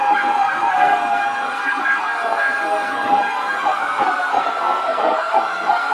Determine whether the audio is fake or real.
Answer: fake